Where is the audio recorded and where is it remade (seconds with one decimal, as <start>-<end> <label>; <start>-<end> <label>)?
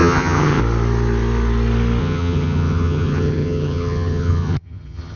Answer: 0.0-0.6 remade; 0.6-2.0 recorded; 2.0-5.2 remade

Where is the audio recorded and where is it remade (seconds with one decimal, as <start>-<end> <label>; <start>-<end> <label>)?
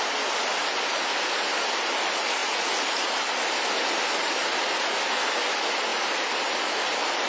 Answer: 0.0-7.3 recorded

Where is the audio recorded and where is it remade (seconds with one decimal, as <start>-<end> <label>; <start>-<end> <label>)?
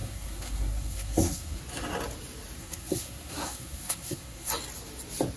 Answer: 0.0-1.6 remade; 1.6-2.6 recorded; 2.6-4.5 remade; 4.5-5.4 recorded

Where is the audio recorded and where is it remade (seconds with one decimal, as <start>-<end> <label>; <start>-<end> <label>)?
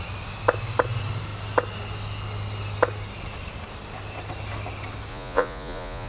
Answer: 0.0-5.1 recorded; 5.1-6.1 remade